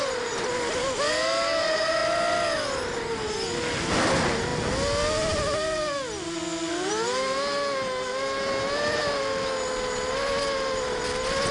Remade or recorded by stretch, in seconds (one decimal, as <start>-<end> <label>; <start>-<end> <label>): 0.0-11.5 recorded